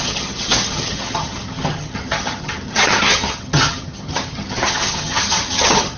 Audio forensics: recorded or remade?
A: remade